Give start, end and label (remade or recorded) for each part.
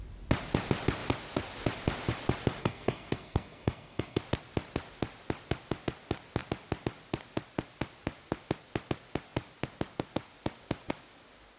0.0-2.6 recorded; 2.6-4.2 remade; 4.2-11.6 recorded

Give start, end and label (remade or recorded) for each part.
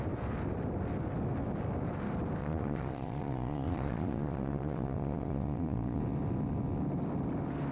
0.0-2.4 recorded; 2.4-6.0 remade; 6.0-7.7 recorded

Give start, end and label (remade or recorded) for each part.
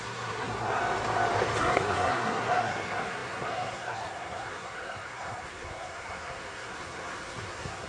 0.0-0.8 remade; 0.8-1.6 recorded; 1.6-7.9 remade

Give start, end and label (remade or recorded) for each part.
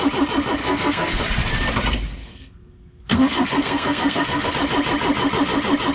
0.0-0.6 recorded; 0.6-1.2 remade; 1.2-2.2 recorded; 2.2-4.5 remade; 4.5-5.9 recorded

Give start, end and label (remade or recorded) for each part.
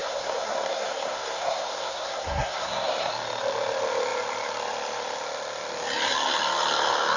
0.0-3.1 remade; 3.1-7.2 recorded